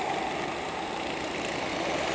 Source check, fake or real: real